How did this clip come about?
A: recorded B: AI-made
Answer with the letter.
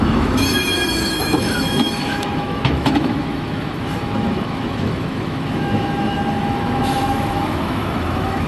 B